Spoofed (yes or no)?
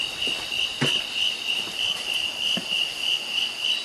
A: no